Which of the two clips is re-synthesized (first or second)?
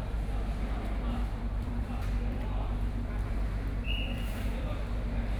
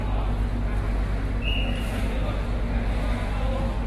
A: first